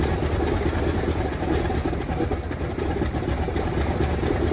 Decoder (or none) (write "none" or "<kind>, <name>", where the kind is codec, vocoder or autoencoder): none